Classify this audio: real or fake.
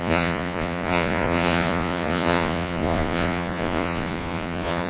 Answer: fake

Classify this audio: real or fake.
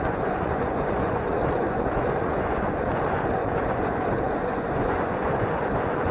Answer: fake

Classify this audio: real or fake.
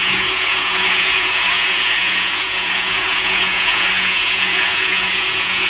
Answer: fake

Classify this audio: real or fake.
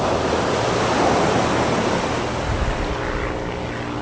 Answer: real